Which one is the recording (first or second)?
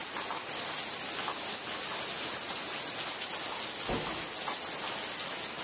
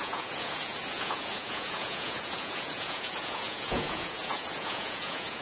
first